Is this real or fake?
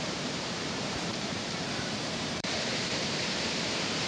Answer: fake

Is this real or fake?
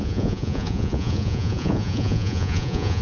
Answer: fake